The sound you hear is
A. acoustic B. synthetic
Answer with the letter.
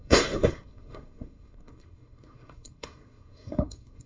B